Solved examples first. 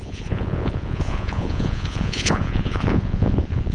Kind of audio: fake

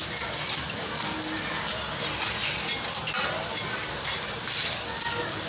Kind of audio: real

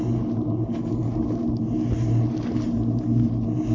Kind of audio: real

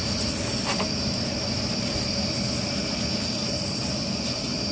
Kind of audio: real